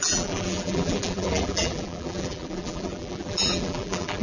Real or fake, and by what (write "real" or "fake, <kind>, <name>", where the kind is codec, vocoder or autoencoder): fake, vocoder, BigVGAN v2